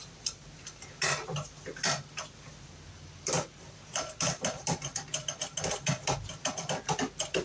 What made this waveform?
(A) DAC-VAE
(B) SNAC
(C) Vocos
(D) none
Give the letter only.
D